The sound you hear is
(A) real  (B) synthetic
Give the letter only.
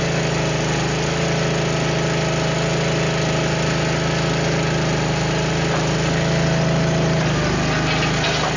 A